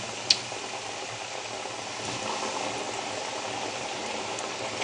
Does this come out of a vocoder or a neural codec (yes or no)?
no